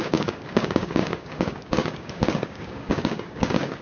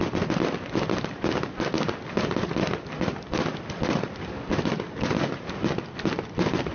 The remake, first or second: first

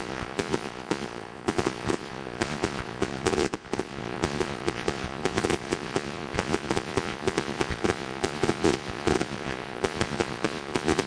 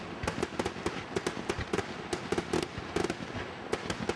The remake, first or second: first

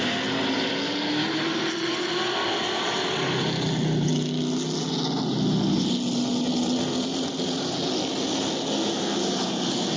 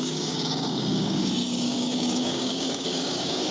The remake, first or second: second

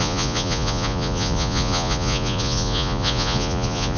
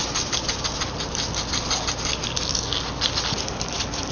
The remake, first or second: first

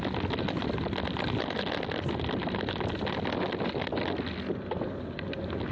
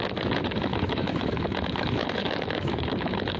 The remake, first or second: second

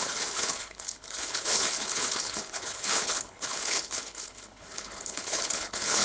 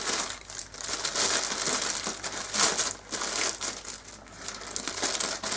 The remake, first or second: first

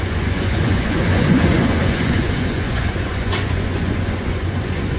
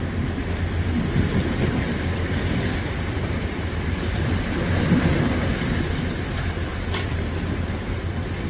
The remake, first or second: first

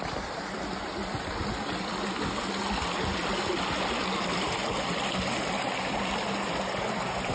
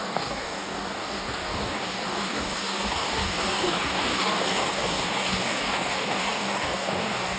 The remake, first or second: second